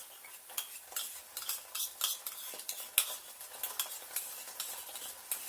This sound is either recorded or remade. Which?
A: recorded